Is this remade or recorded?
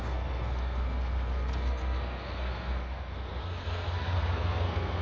remade